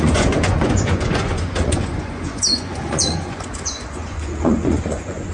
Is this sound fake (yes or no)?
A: yes